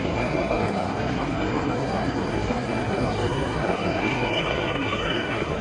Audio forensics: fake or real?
fake